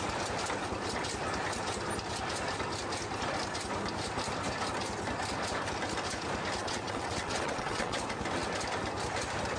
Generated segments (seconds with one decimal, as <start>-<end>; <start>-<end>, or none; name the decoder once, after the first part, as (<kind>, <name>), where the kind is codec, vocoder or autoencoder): 6.6-8.0 (vocoder, WaveNeXt)